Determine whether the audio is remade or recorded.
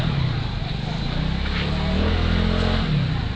recorded